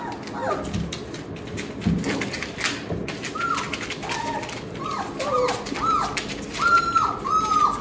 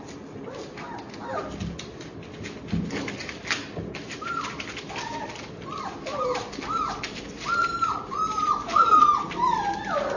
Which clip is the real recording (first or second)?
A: first